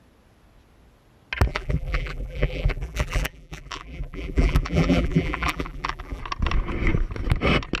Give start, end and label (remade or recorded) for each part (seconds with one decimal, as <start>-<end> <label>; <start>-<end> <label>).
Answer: 0.0-1.5 recorded; 1.5-6.2 remade; 6.2-7.8 recorded